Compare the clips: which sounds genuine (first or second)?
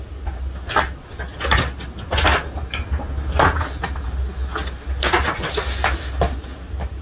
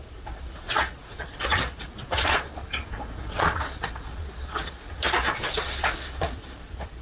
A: first